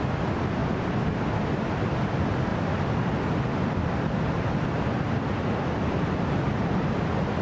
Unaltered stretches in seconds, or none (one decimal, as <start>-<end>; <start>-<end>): 0.0-7.4